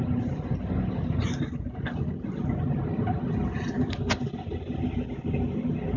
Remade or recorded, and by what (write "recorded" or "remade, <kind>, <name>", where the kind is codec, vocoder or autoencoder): recorded